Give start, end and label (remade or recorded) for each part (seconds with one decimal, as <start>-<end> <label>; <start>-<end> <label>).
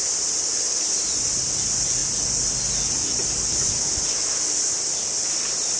0.0-5.8 recorded